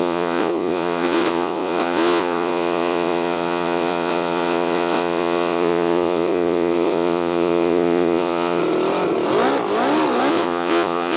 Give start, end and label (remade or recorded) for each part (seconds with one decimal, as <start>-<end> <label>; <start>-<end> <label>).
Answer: 0.0-8.6 remade; 8.6-10.3 recorded; 10.3-11.2 remade